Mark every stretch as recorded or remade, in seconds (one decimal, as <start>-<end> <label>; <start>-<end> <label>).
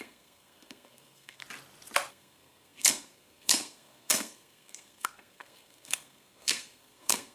0.0-1.4 remade; 1.4-2.1 recorded; 2.1-7.3 remade